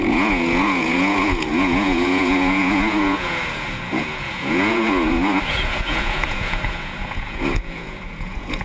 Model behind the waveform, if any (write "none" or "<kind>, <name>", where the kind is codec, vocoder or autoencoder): vocoder, Vocos